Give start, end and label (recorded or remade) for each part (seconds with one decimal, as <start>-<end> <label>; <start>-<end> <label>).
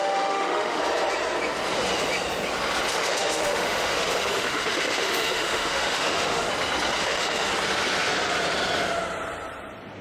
0.0-0.8 remade; 0.8-2.9 recorded; 2.9-6.5 remade; 6.5-7.0 recorded; 7.0-7.5 remade; 7.5-10.0 recorded